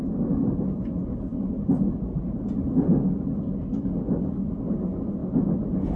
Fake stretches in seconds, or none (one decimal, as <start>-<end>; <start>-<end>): none